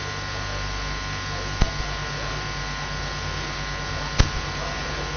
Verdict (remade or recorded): recorded